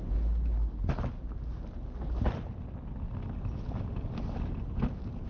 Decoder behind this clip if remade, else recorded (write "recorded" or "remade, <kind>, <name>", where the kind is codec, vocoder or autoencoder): recorded